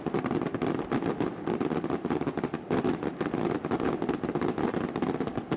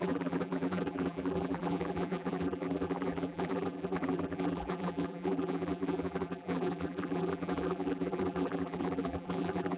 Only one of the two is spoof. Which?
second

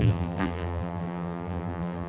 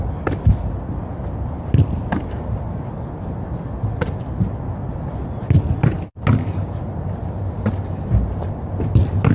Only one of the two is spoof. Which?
first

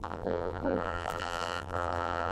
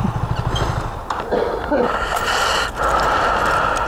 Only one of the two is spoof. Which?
first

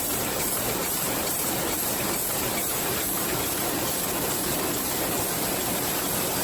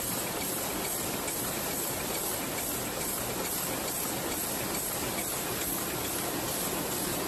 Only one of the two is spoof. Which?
first